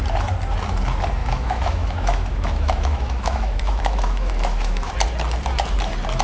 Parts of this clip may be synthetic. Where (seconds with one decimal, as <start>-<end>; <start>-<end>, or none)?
1.2-4.9